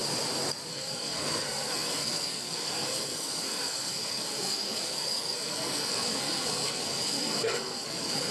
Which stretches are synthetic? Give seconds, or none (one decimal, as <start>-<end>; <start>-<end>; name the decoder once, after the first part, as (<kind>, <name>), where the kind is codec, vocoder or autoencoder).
0.7-8.3 (codec, SNAC)